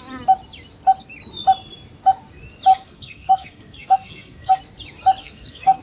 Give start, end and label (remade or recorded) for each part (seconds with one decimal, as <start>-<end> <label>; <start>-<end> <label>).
0.0-2.7 recorded; 2.7-4.6 remade; 4.6-5.2 recorded; 5.2-5.8 remade